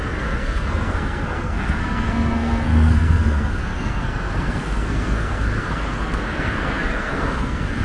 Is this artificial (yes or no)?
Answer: yes